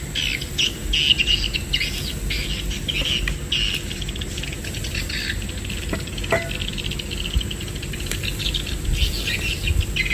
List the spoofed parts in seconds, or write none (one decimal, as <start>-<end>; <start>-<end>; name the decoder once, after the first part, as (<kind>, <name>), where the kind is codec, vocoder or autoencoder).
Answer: none